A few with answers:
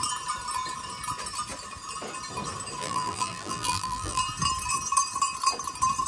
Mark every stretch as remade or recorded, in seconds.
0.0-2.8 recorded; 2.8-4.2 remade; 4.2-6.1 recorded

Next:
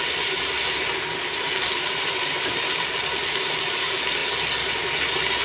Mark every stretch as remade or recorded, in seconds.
0.0-4.2 recorded; 4.2-4.7 remade; 4.7-5.4 recorded

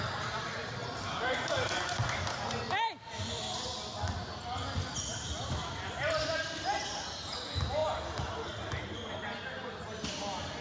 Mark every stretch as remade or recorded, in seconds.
0.0-7.8 recorded; 7.8-9.1 remade; 9.1-10.6 recorded

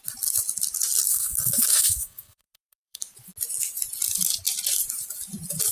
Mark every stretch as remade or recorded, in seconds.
0.0-1.1 recorded; 1.1-3.0 remade; 3.0-5.7 recorded

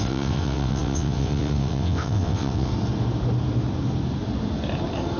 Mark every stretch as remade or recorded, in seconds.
0.0-2.7 remade; 2.7-5.2 recorded